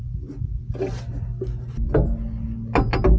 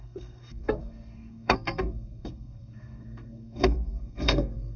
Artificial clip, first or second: second